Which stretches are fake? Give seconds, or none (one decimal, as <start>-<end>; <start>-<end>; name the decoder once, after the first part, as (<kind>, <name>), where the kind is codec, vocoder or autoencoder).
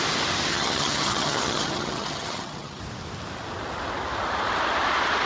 0.5-2.8 (vocoder, HiFi-GAN)